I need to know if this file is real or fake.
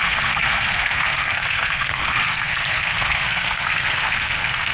fake